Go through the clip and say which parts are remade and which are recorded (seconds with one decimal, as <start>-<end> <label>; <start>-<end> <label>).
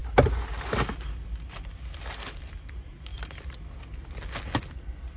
0.0-5.2 recorded